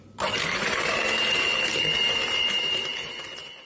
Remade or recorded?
remade